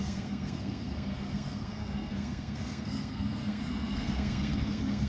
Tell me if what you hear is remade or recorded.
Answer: remade